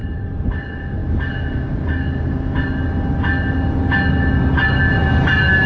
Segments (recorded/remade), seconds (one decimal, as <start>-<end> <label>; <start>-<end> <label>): 0.0-0.6 remade; 0.6-5.7 recorded